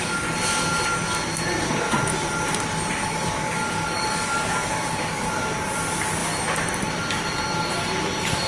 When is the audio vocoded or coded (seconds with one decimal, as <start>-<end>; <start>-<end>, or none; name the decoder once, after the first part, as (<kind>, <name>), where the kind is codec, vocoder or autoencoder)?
3.0-5.3 (codec, DAC)